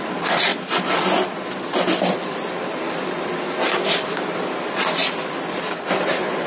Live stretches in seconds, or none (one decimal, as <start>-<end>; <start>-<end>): 0.0-6.5